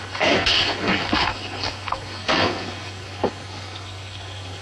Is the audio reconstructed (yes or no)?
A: yes